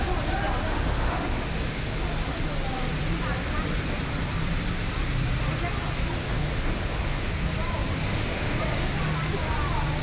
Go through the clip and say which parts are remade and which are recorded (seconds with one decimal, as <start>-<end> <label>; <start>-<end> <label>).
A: 0.0-0.7 recorded; 0.7-1.8 remade; 1.8-6.2 recorded; 6.2-7.3 remade; 7.3-8.1 recorded; 8.1-8.6 remade; 8.6-10.0 recorded

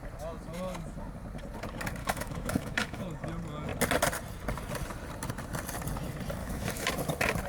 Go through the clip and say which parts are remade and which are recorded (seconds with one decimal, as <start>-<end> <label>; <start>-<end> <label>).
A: 0.0-2.0 recorded; 2.0-3.0 remade; 3.0-6.4 recorded; 6.4-6.9 remade; 6.9-7.5 recorded

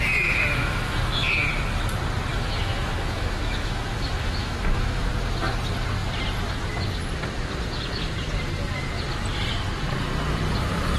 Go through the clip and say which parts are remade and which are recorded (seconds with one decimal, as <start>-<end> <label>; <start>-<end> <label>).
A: 0.0-0.4 recorded; 0.4-1.5 remade; 1.5-2.3 recorded; 2.3-5.1 remade; 5.1-11.0 recorded

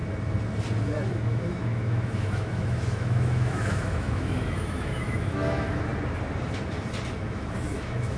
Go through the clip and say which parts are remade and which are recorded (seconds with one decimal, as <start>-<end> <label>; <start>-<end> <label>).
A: 0.0-1.1 recorded; 1.1-5.9 remade; 5.9-7.2 recorded; 7.2-8.2 remade